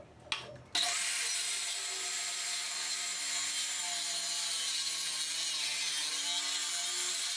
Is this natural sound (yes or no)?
yes